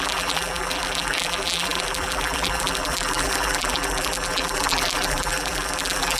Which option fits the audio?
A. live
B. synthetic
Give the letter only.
B